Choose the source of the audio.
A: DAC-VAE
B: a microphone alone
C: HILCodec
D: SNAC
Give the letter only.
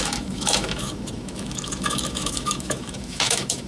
A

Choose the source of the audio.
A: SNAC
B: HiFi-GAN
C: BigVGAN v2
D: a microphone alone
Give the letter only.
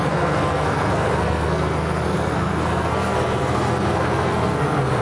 A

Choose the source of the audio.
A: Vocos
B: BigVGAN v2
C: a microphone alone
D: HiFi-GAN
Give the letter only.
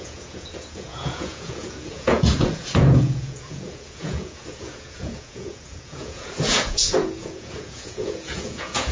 A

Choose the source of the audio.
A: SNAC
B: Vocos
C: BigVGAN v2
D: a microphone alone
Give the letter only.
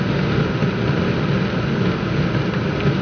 D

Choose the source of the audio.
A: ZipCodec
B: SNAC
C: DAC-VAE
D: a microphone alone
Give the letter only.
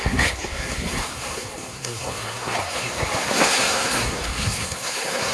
B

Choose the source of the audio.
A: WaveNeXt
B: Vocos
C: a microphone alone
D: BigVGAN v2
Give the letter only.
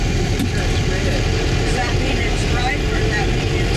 C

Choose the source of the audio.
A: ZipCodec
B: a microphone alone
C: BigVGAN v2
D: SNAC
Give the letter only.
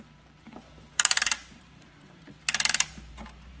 C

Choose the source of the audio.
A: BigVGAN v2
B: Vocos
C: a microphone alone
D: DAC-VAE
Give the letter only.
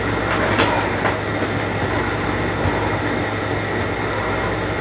C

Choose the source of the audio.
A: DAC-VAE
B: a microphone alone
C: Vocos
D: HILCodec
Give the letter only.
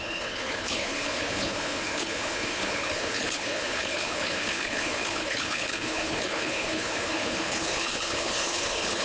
D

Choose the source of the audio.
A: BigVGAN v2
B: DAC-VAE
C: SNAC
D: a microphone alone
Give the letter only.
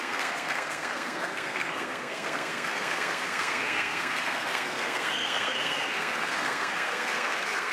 C